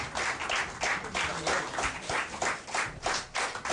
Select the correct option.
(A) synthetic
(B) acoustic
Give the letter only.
B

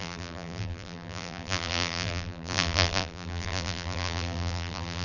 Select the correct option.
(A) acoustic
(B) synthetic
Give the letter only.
B